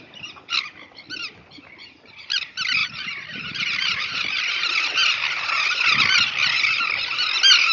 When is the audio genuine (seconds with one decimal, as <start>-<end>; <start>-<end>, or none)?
0.0-7.7

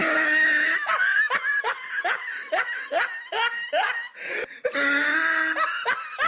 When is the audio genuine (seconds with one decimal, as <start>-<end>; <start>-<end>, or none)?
0.0-6.3

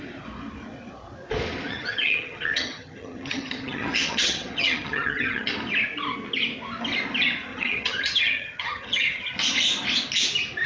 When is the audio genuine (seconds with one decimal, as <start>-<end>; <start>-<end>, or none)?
0.0-1.7; 5.5-7.5; 9.3-10.7

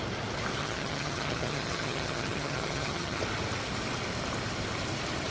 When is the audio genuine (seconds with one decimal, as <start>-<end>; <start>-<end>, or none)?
0.0-0.6; 3.2-5.3